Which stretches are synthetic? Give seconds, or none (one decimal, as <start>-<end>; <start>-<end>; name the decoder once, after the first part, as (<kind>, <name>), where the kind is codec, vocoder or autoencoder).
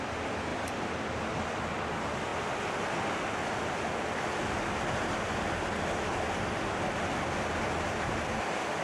0.5-1.0 (vocoder, BigVGAN v2)